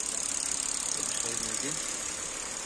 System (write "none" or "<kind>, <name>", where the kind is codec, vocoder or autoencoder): none